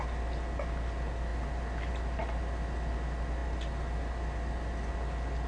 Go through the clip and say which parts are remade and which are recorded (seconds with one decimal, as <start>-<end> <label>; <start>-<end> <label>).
0.0-5.5 recorded